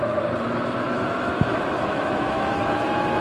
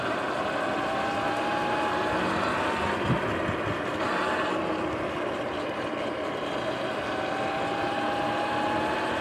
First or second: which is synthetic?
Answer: first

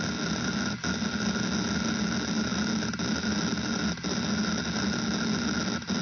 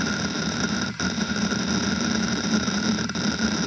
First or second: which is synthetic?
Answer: second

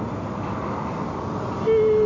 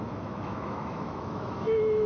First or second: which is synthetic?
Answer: second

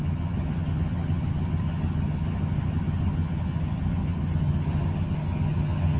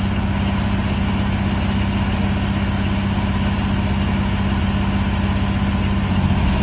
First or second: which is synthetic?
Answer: first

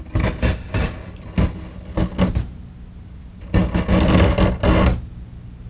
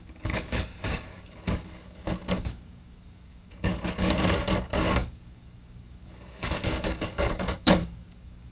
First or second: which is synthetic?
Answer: second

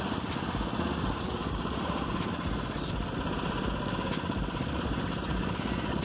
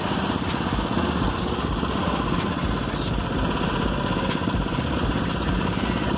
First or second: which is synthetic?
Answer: first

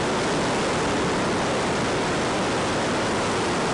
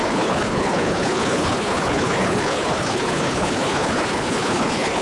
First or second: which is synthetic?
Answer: second